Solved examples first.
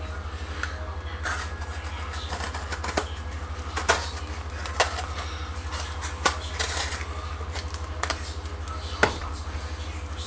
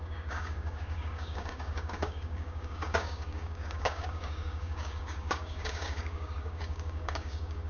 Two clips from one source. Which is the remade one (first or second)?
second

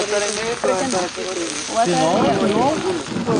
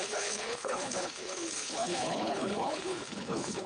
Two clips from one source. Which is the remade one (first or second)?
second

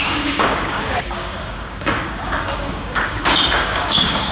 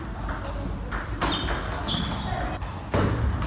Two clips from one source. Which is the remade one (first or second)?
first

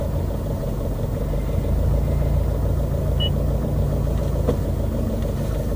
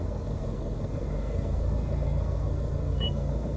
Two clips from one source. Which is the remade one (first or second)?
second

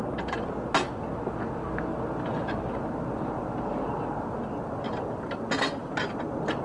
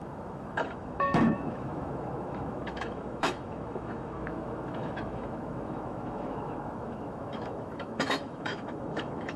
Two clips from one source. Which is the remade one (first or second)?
second